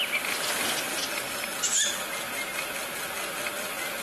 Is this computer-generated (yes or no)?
no